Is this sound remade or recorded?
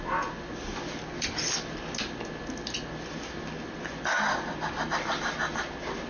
recorded